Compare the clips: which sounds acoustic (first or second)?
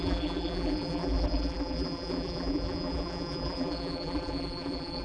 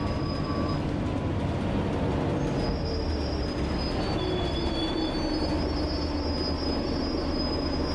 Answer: second